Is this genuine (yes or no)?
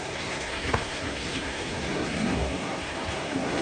no